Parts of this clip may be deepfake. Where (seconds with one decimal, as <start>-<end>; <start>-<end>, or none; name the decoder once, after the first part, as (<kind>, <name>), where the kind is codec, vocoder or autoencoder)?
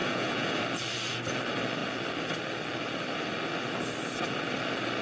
0.0-0.6 (vocoder, Vocos)